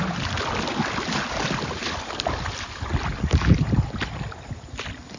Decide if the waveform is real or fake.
real